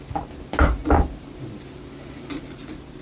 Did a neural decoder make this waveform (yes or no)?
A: no